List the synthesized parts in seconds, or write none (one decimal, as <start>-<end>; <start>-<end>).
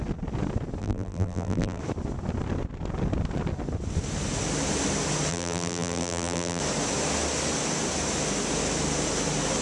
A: 0.8-1.8; 5.3-6.6